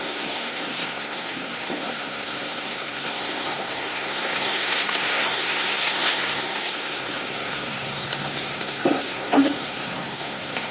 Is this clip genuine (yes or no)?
no